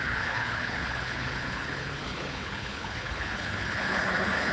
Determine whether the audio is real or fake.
fake